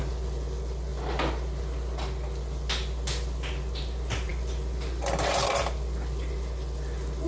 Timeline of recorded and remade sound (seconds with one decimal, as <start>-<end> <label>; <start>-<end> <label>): 0.0-7.3 recorded